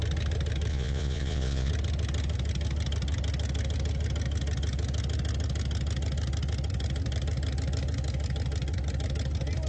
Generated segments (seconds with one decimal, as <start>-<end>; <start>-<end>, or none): 0.7-1.7